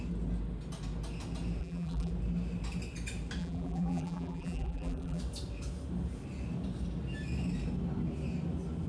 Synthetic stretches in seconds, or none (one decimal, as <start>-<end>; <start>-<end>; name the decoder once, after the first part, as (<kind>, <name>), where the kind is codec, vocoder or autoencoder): 1.6-2.1 (vocoder, BigVGAN v2); 3.4-5.2